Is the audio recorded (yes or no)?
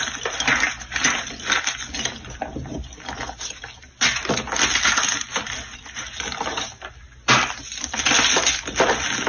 yes